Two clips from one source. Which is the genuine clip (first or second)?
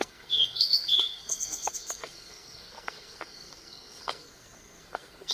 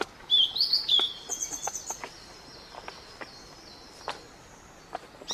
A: second